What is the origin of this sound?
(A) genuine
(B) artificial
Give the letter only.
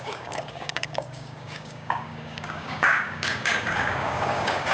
B